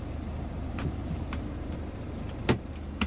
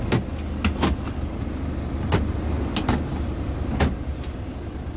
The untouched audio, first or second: second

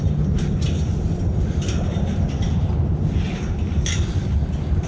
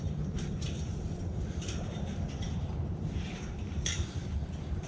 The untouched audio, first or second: first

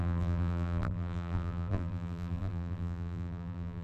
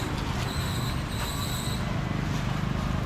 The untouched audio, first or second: second